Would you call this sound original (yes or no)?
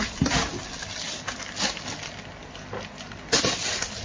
yes